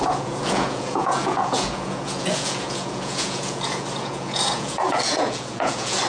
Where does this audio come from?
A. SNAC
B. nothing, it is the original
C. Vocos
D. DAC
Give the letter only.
C